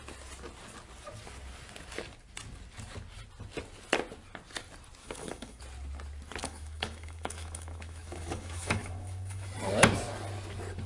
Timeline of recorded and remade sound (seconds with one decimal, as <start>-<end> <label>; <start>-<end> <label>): 0.0-5.0 recorded; 5.0-5.6 remade; 5.6-6.4 recorded; 6.4-9.5 remade; 9.5-10.9 recorded